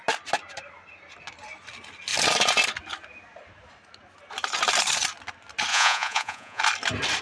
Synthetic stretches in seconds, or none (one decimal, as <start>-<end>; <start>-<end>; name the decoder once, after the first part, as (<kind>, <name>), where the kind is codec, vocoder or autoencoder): 5.7-6.6 (vocoder, Vocos)